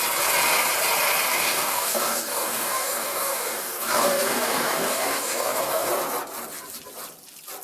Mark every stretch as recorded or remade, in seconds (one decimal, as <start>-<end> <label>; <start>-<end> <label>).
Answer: 0.0-1.3 recorded; 1.3-5.9 remade; 5.9-7.6 recorded